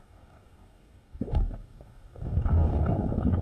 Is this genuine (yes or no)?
no